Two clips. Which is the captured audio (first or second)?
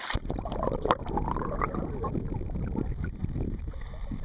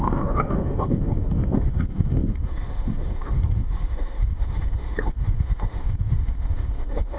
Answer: first